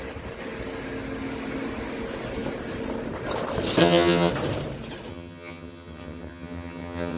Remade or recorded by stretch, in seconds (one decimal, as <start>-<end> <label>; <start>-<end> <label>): 0.0-3.8 recorded; 3.8-4.3 remade; 4.3-5.1 recorded; 5.1-7.2 remade